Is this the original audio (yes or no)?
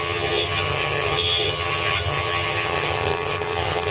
no